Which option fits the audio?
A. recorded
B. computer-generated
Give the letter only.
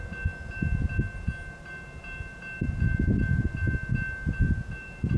A